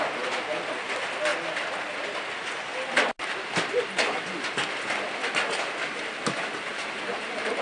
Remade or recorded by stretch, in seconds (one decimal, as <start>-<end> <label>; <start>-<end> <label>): 0.0-5.2 recorded; 5.2-7.6 remade